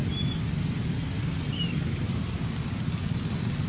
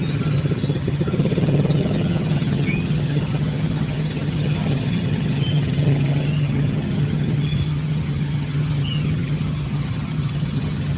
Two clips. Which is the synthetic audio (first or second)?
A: second